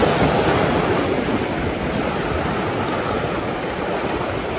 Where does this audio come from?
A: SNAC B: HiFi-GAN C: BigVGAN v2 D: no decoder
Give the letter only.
D